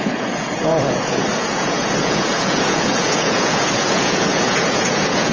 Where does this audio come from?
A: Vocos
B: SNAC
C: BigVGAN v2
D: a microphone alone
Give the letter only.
A